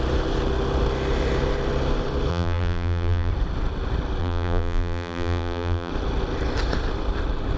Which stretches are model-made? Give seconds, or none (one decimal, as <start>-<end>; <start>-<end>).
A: 2.3-3.3; 4.2-5.9